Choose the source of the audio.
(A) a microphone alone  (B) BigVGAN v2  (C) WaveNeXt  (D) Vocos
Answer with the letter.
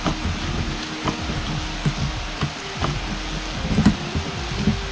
A